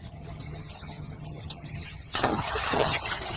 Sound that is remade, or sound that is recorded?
remade